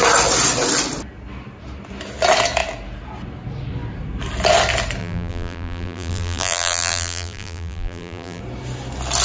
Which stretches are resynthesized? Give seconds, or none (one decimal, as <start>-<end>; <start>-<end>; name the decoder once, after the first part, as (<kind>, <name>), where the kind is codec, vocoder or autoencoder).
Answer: 5.0-8.4 (vocoder, BigVGAN v2)